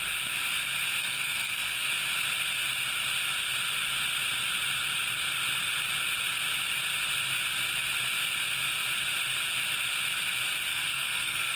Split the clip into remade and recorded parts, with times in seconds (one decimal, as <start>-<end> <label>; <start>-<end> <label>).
0.0-1.0 recorded; 1.0-1.9 remade; 1.9-10.7 recorded; 10.7-11.6 remade